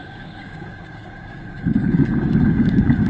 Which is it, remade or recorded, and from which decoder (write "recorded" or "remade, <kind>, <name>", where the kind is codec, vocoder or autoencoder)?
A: remade, codec, DAC